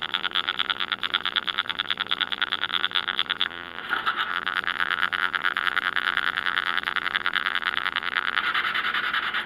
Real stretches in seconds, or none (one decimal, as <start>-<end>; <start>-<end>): 3.8-4.3; 8.4-9.5